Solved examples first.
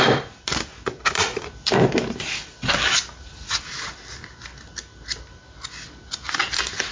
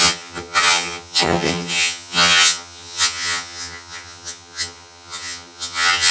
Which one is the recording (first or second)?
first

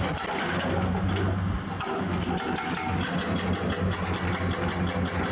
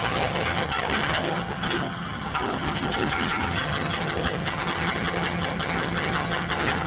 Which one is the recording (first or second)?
first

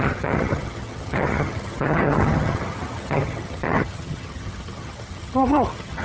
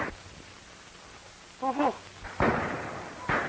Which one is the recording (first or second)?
second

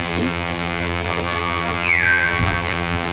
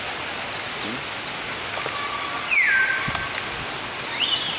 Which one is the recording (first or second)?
second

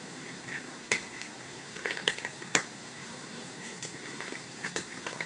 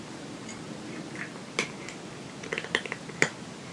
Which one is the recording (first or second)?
second